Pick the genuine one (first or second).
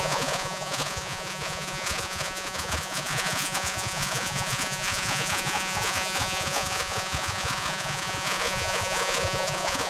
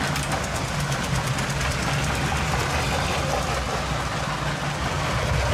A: second